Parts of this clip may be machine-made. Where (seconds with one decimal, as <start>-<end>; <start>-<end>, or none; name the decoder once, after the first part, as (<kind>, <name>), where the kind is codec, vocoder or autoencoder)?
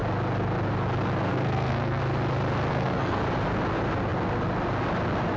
1.3-2.0 (codec, SNAC); 2.7-3.2